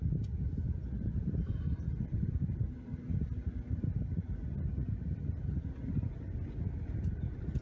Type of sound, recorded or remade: recorded